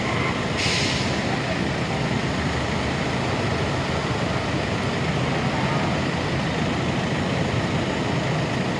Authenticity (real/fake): real